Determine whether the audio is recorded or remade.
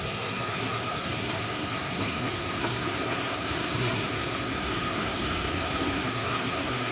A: remade